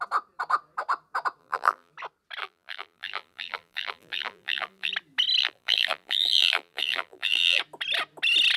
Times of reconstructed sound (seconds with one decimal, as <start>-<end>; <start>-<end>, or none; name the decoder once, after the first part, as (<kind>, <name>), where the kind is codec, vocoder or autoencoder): 1.4-1.9 (vocoder, BigVGAN v2); 2.4-4.9; 5.4-7.6